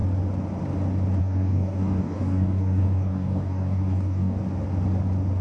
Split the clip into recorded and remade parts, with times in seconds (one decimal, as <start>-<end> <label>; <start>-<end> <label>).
0.0-1.2 recorded; 1.2-4.4 remade; 4.4-5.4 recorded